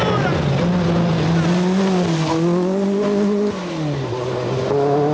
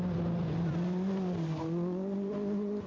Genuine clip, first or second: first